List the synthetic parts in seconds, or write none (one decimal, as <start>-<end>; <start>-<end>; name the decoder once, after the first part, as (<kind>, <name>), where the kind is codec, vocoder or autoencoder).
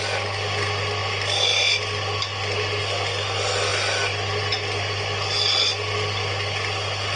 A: none